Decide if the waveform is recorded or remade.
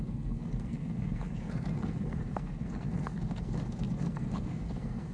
remade